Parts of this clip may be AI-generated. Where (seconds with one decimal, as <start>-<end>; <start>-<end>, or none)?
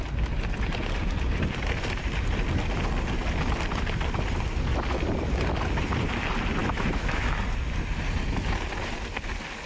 6.6-7.4